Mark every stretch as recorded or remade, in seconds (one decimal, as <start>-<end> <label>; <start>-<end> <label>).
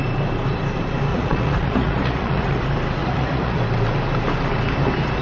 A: 0.0-1.1 recorded; 1.1-2.6 remade; 2.6-3.0 recorded; 3.0-3.6 remade; 3.6-5.2 recorded